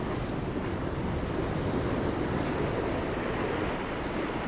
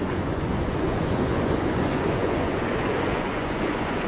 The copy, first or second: second